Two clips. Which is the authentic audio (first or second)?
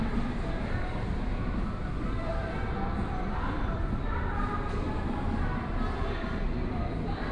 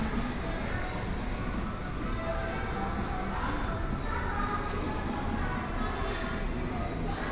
second